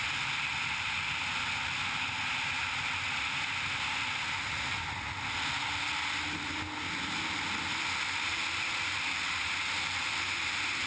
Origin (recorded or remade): recorded